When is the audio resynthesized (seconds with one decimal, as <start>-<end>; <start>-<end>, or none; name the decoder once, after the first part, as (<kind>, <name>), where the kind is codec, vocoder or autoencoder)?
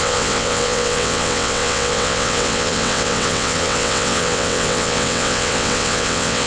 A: 0.0-6.5 (vocoder, WaveNeXt)